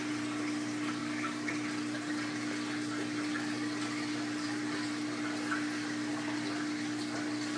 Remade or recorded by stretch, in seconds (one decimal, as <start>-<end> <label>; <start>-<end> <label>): 0.0-1.0 recorded; 1.0-1.5 remade; 1.5-7.6 recorded